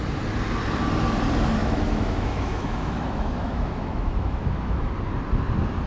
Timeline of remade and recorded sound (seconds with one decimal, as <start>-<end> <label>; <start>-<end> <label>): 0.0-1.6 recorded; 1.6-4.9 remade; 4.9-5.9 recorded